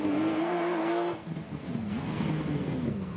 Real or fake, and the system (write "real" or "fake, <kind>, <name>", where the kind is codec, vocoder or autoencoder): fake, codec, SNAC